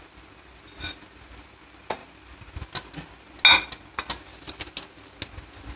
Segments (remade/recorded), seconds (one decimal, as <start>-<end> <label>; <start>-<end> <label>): 0.0-5.8 recorded